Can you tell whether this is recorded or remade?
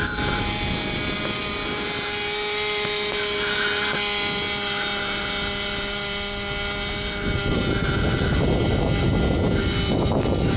recorded